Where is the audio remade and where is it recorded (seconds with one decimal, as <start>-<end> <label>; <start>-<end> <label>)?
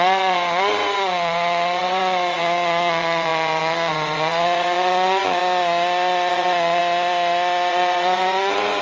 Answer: 0.0-5.4 remade; 5.4-6.3 recorded; 6.3-6.8 remade; 6.8-7.7 recorded; 7.7-8.8 remade